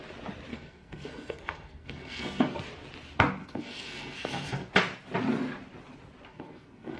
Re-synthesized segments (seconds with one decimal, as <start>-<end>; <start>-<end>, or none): 0.5-2.6; 3.4-4.7; 6.3-7.0